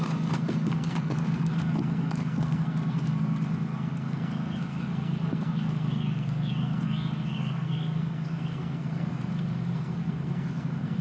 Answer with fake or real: fake